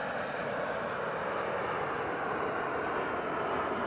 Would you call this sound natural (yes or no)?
yes